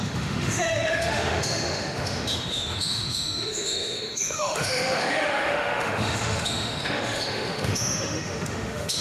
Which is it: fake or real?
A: fake